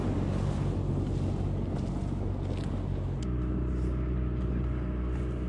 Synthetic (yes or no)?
no